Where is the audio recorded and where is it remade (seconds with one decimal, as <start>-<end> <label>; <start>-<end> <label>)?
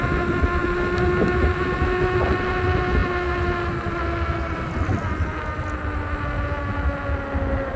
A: 0.0-7.8 recorded